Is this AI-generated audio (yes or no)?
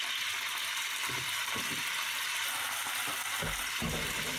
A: no